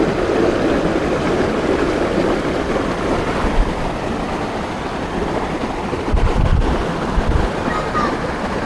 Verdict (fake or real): real